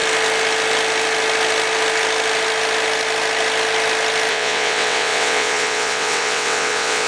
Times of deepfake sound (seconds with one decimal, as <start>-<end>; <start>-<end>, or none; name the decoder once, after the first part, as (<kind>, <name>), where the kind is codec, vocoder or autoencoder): 4.3-7.1 (vocoder, WaveNeXt)